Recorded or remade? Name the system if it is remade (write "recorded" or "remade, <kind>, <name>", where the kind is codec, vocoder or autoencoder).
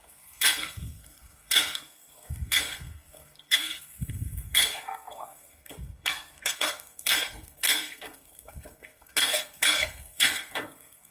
remade, codec, SNAC